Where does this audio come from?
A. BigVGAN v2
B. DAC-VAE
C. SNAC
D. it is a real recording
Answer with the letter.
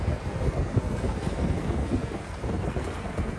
C